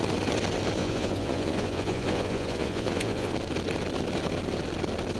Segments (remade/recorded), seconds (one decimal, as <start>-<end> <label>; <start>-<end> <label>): 0.0-0.8 recorded; 0.8-3.3 remade; 3.3-5.2 recorded